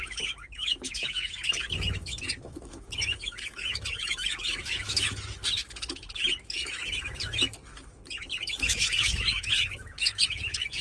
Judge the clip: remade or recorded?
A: remade